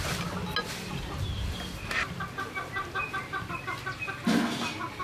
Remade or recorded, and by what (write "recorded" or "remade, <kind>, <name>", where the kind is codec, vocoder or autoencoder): recorded